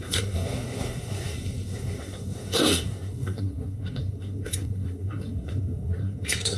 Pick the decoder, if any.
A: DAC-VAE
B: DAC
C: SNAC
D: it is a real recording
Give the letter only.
C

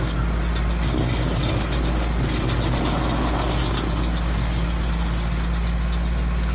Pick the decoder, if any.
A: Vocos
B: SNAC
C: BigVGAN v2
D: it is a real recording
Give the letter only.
D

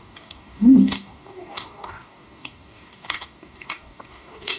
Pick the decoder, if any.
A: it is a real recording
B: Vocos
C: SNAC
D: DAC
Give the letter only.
D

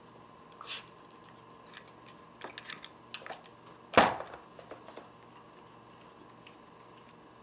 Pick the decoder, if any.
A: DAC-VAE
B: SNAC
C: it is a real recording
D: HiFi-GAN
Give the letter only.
C